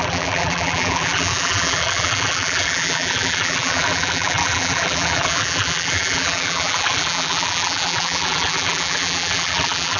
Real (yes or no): no